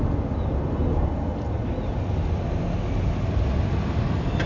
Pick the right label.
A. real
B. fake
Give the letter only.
A